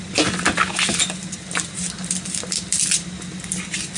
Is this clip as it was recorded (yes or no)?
yes